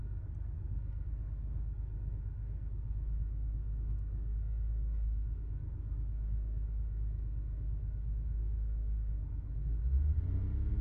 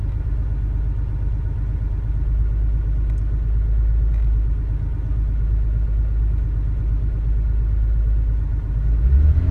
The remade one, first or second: first